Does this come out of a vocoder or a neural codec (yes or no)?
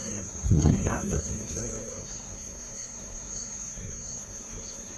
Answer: yes